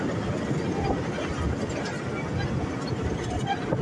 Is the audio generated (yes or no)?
no